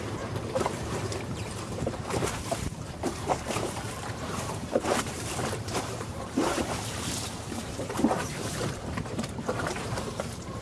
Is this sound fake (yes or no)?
yes